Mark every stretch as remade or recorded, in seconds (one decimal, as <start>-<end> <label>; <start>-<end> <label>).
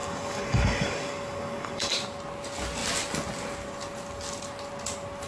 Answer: 0.0-1.9 remade; 1.9-5.3 recorded